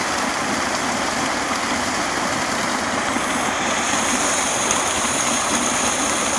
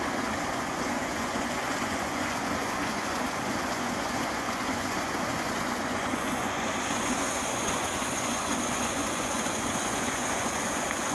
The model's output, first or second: second